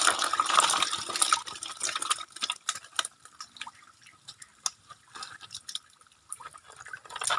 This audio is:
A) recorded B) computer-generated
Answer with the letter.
A